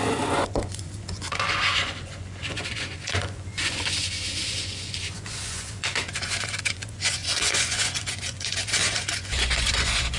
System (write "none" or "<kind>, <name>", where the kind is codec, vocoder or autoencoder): vocoder, Vocos